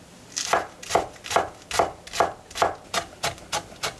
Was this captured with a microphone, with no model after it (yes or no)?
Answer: yes